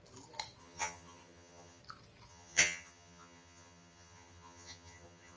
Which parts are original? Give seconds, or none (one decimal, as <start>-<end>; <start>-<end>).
0.0-0.6; 1.8-2.3